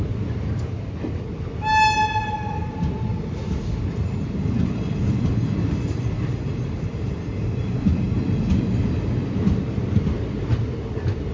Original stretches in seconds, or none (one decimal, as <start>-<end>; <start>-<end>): 0.0-11.3